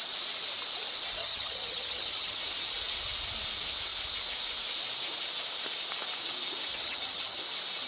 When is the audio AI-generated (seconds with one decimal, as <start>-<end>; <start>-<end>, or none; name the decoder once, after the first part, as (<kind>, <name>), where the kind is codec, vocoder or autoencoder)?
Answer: 1.2-2.4 (vocoder, HiFi-GAN); 6.7-7.4

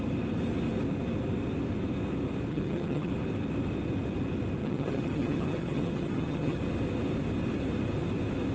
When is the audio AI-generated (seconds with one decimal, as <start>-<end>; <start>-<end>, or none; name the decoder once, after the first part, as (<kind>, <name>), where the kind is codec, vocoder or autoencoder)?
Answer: 2.5-3.1 (vocoder, HiFi-GAN); 4.6-6.6

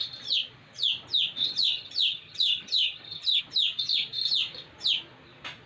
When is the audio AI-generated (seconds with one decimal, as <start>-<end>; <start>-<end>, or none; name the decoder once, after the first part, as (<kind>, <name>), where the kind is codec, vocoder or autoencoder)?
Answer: 1.4-3.4 (vocoder, HiFi-GAN)

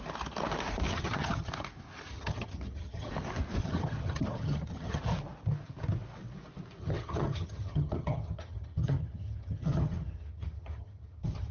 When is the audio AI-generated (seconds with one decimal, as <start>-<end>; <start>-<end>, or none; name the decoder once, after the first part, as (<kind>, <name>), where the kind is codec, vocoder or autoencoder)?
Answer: 0.9-1.5 (vocoder, HiFi-GAN); 2.1-3.1; 3.6-5.0; 6.8-11.5